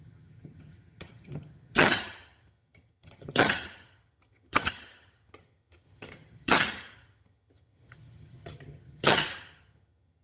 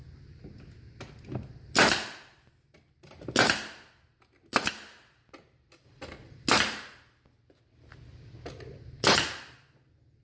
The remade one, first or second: first